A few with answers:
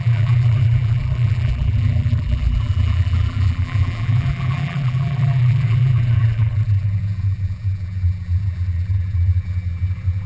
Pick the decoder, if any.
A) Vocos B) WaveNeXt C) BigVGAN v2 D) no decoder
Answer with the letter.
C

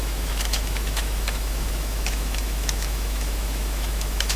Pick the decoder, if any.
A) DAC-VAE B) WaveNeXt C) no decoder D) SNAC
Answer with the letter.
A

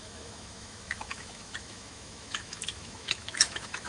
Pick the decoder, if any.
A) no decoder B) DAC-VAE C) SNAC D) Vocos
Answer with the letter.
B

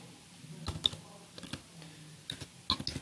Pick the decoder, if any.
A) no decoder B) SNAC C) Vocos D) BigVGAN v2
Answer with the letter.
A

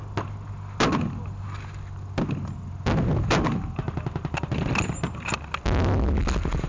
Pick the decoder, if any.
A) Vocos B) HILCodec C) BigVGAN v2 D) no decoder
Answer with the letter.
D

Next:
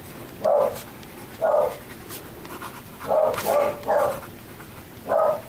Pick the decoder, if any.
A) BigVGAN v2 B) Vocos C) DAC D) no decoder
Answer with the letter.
D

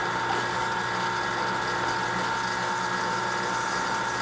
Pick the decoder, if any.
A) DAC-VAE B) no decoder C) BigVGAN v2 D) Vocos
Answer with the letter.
B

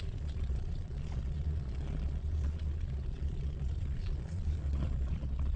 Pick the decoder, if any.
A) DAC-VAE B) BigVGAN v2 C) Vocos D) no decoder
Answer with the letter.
C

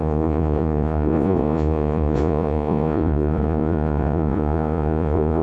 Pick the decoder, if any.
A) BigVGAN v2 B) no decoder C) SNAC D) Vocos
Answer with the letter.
D